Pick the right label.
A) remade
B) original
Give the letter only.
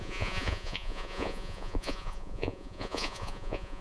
A